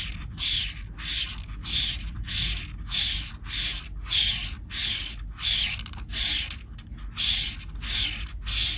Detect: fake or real real